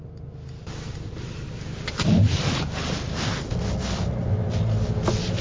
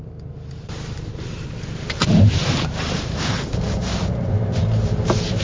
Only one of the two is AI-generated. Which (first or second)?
second